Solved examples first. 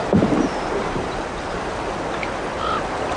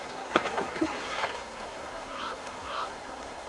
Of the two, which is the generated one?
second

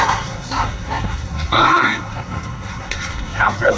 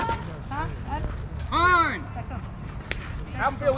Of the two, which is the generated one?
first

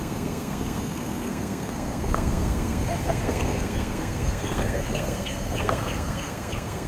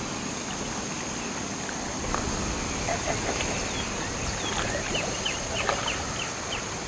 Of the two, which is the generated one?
first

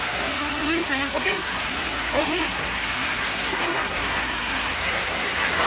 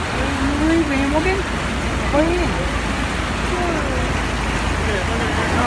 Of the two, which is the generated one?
first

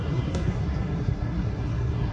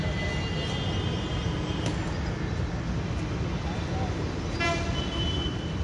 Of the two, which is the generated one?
first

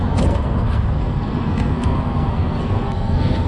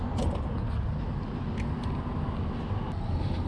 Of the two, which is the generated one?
first